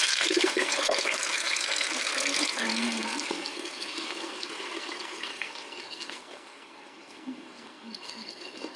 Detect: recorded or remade remade